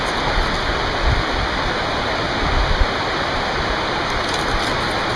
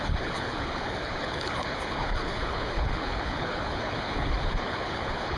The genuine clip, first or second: first